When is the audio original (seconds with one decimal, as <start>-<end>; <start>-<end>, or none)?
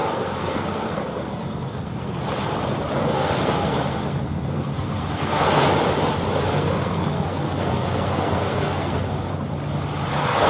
2.2-3.0; 5.6-6.4; 9.3-10.1